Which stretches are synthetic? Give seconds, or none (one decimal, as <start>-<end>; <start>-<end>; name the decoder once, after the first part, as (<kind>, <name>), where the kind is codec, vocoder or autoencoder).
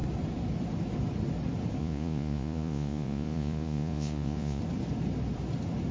1.8-4.6 (vocoder, Vocos)